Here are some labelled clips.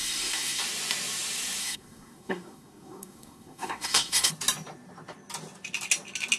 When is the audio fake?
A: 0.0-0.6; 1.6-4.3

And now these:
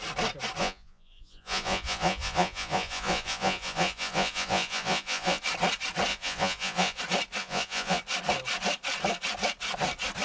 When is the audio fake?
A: 0.6-5.4; 6.1-7.0; 7.4-8.0

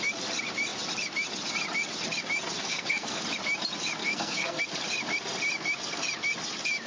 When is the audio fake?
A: 2.6-3.2; 4.0-4.6

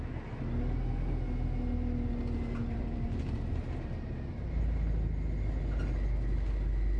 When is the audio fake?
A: 2.6-3.2

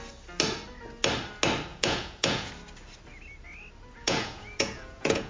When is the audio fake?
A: 1.7-2.5; 4.0-5.3

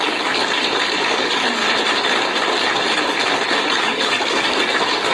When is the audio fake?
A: 0.0-0.4; 1.0-1.6; 3.7-5.1

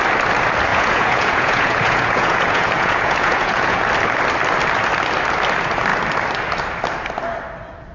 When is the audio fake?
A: 0.7-3.9